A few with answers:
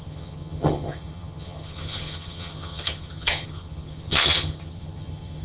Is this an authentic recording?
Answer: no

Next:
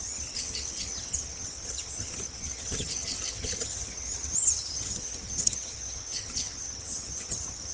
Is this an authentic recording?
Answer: no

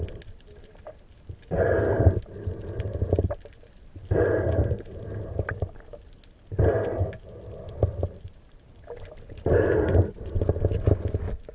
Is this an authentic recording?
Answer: yes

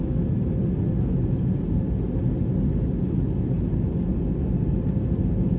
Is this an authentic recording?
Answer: yes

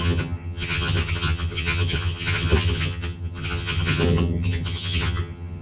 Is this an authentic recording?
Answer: no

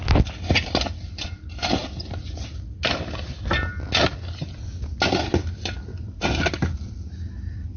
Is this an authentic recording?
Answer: yes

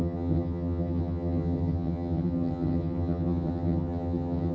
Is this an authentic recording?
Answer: no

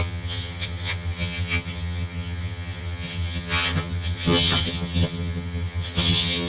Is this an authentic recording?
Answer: no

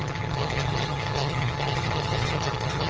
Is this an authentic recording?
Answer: no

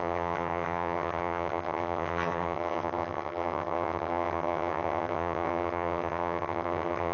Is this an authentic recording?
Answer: no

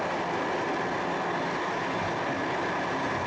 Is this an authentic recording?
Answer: yes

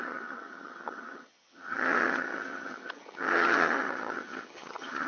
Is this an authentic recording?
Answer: no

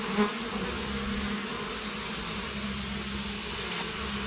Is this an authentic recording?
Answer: yes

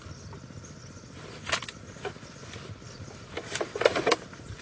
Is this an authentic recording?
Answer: yes